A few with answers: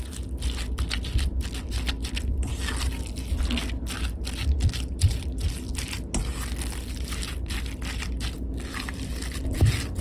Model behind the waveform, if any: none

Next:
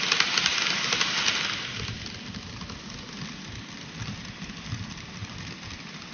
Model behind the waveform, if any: none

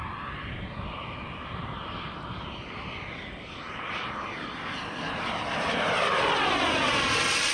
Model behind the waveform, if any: none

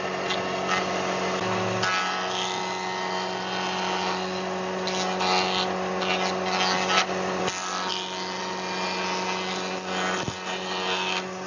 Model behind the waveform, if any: none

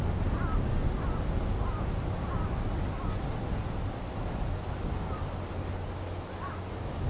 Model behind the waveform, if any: none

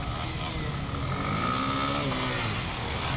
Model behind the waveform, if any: none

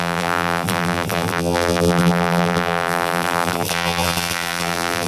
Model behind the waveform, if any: vocoder, BigVGAN v2